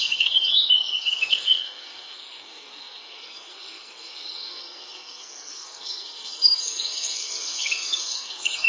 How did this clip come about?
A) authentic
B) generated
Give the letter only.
B